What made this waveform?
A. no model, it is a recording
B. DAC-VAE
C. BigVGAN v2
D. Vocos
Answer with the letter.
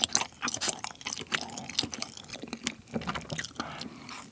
A